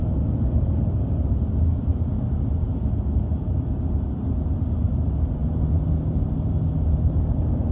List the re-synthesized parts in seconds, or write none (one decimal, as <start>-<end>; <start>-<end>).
none